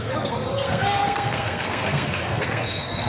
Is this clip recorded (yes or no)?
no